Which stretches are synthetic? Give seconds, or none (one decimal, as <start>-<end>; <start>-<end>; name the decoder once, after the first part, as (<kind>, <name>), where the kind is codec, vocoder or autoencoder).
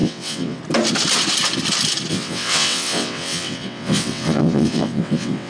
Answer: 0.0-0.6 (vocoder, WaveNeXt); 2.1-5.5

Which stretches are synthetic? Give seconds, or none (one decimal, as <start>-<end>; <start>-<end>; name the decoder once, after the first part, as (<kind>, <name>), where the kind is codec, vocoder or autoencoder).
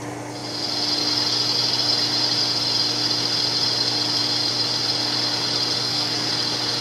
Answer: 5.8-6.3 (codec, SNAC)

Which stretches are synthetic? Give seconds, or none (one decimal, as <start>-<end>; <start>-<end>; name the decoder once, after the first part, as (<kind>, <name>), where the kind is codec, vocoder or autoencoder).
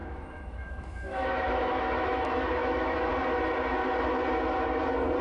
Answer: 0.0-3.1 (autoencoder, DAC-VAE)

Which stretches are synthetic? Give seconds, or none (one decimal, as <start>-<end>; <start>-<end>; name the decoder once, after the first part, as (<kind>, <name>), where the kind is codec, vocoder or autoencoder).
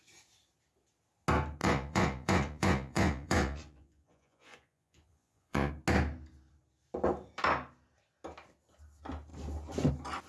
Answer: 1.6-5.7 (vocoder, Vocos)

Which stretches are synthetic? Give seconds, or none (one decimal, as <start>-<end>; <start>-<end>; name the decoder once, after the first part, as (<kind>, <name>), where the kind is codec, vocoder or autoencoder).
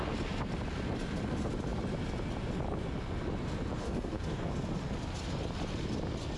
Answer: 3.8-4.5 (codec, DAC)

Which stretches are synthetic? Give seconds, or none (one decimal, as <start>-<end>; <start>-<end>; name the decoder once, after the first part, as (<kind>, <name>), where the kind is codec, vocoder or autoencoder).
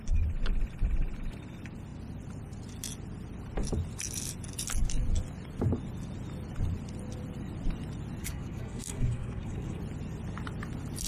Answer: 8.2-9.8 (codec, SNAC)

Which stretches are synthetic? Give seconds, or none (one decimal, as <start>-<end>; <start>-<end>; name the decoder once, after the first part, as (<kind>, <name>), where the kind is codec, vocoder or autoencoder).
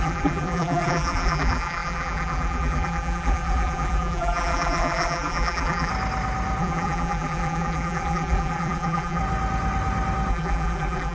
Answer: 0.0-5.9 (vocoder, BigVGAN v2); 6.6-9.2; 10.3-11.1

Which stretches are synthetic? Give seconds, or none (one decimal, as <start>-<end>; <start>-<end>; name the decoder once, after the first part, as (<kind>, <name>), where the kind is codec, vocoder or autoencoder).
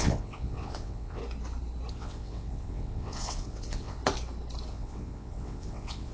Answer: 0.0-1.2 (vocoder, WaveNeXt); 1.9-4.0; 4.7-6.1